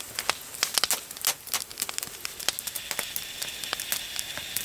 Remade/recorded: recorded